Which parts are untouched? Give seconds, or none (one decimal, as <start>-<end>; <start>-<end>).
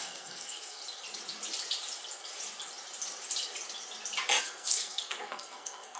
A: 0.8-4.4